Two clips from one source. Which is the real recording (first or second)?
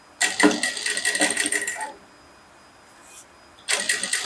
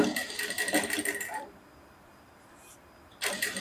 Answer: first